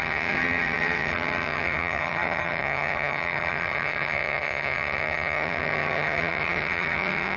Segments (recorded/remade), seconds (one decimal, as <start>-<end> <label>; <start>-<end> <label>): 0.0-7.4 remade